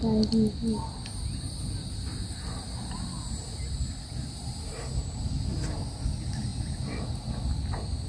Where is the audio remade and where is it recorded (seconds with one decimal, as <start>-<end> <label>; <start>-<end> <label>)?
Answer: 0.0-8.1 recorded